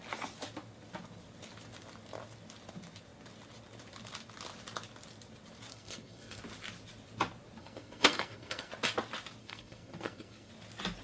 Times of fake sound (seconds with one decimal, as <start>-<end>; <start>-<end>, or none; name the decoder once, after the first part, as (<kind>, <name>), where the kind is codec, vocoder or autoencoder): 5.7-6.4 (codec, SNAC); 7.6-8.7; 9.4-10.5